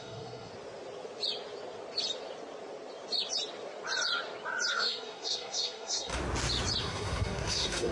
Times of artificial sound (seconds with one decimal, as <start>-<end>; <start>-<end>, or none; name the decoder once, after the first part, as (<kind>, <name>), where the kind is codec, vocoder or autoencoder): 0.0-0.5 (codec, SNAC); 4.7-6.2; 6.8-7.9